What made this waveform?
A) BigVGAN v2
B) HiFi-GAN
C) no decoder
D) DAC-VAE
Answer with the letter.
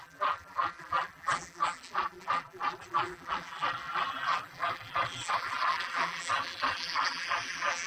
A